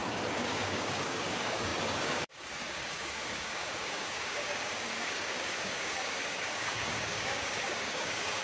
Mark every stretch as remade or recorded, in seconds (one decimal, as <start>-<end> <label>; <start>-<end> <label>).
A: 0.0-8.4 remade